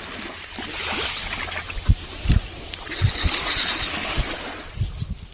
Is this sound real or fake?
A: real